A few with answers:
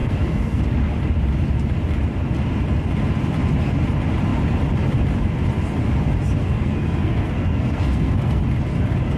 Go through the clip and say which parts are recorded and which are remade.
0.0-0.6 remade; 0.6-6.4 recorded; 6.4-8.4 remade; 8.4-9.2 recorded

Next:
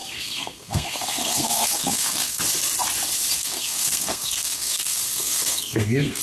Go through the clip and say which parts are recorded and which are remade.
0.0-2.4 remade; 2.4-3.4 recorded; 3.4-6.2 remade

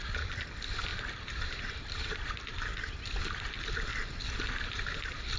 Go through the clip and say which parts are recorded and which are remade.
0.0-5.4 recorded

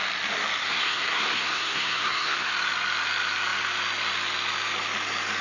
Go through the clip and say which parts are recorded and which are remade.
0.0-0.6 recorded; 0.6-2.5 remade; 2.5-5.4 recorded